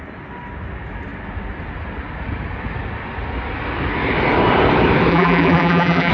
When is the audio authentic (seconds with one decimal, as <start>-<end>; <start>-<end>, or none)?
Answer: 0.0-5.1